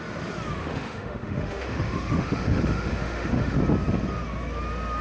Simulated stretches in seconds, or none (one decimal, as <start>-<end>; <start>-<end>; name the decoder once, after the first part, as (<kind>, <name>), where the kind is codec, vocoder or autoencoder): 0.6-3.6 (autoencoder, DAC-VAE)